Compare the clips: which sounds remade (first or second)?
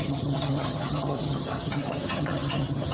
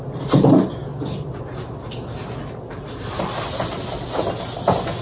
first